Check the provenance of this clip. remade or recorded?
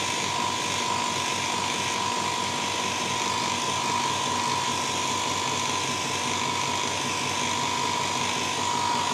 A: recorded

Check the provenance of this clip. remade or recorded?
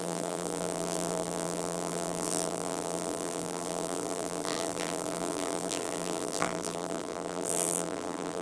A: remade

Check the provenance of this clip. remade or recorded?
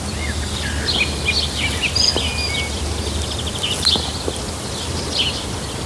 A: recorded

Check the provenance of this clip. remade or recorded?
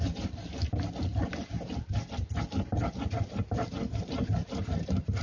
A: recorded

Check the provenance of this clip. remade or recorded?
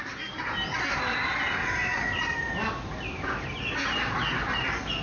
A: recorded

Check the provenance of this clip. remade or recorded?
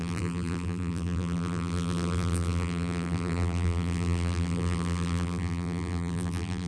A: remade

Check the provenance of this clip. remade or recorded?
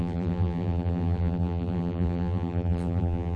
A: remade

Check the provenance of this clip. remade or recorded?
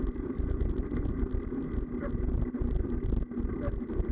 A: recorded